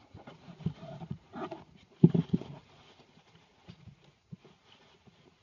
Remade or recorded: remade